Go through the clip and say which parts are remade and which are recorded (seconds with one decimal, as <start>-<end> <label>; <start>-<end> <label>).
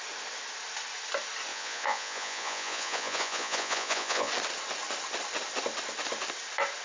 0.0-1.5 recorded; 1.5-4.3 remade; 4.3-6.8 recorded